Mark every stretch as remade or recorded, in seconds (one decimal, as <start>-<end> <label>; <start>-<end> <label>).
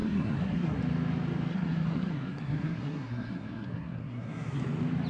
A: 0.0-0.8 remade; 0.8-1.5 recorded; 1.5-4.6 remade; 4.6-5.1 recorded